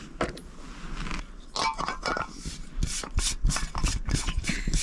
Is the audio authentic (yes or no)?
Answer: yes